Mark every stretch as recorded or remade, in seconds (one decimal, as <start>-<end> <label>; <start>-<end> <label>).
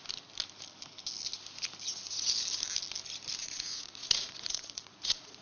0.0-3.4 recorded; 3.4-5.4 remade